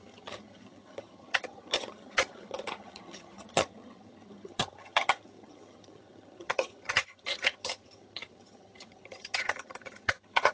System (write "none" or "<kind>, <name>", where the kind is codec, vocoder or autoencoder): vocoder, HiFi-GAN